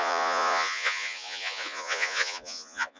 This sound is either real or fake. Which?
fake